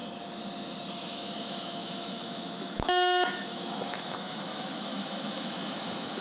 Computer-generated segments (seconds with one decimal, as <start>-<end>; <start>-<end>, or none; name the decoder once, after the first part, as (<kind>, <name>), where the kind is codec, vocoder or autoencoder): 0.9-6.2 (autoencoder, DAC-VAE)